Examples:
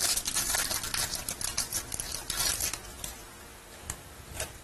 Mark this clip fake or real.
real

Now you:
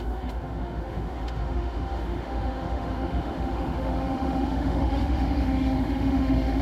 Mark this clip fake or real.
fake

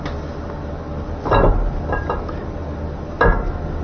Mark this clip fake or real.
real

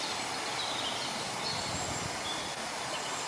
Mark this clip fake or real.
real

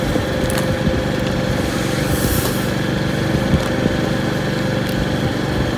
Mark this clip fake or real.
real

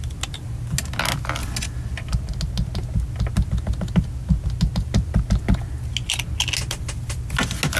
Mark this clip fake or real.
real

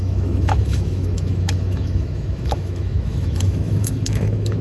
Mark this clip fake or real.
fake